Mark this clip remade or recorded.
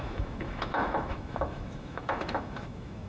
remade